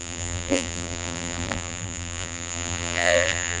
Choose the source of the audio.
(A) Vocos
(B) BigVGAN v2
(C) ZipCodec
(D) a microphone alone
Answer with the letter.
B